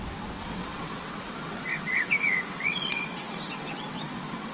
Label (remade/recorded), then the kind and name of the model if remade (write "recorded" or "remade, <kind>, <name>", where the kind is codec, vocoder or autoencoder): remade, vocoder, WaveNeXt